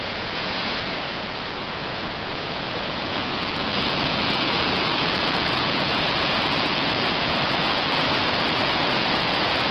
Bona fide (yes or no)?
no